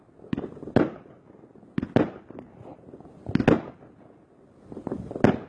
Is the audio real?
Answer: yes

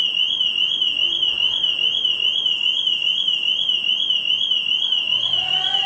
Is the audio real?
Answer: yes